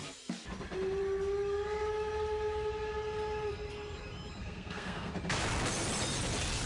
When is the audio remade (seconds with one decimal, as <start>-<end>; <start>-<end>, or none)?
4.4-5.1